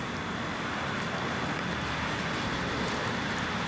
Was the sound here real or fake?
real